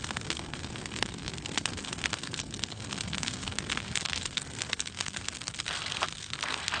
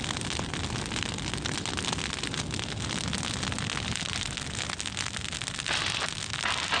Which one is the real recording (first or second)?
second